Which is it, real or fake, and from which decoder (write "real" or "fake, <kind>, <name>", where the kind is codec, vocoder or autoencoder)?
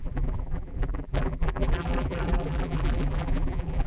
fake, vocoder, BigVGAN v2